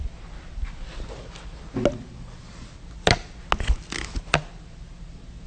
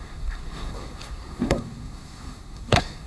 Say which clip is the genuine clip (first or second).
first